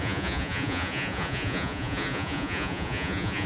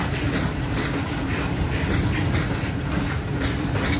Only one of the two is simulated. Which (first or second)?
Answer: first